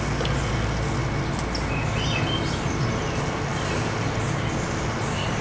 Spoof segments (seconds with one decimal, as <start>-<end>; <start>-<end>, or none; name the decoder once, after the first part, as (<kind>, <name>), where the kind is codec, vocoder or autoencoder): none